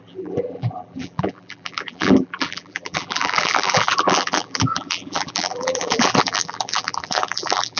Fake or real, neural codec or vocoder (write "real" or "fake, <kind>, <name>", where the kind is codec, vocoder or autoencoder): fake, vocoder, BigVGAN v2